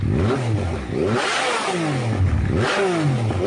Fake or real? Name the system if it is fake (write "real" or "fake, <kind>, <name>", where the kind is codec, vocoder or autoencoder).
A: real